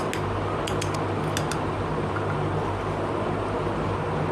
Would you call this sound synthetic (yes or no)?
no